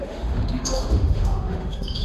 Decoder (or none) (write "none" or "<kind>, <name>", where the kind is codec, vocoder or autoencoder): autoencoder, DAC-VAE